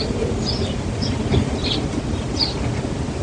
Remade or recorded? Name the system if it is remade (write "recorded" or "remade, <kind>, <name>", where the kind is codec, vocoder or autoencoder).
recorded